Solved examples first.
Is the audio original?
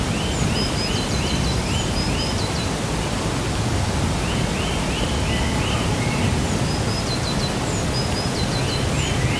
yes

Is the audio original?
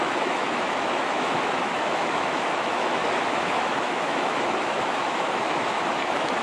no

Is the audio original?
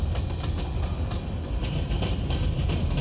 yes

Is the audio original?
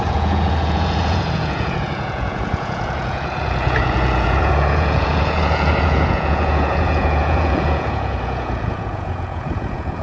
no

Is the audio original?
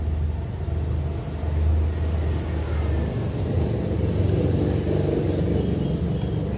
yes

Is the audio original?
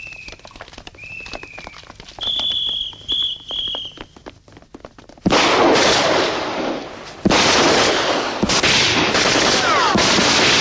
yes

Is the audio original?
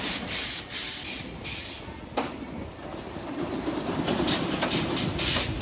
yes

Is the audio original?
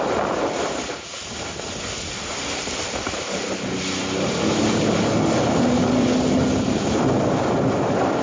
yes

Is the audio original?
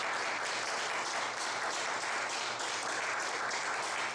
yes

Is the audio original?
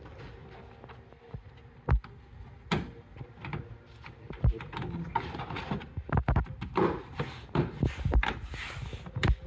yes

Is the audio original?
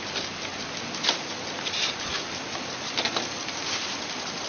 yes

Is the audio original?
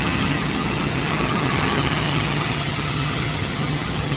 no